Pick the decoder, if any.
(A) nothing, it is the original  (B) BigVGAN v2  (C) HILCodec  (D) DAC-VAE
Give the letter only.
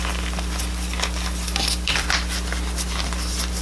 B